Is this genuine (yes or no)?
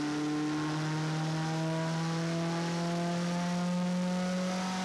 yes